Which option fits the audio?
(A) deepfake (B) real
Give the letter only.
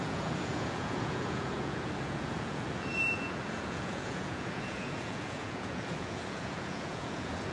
A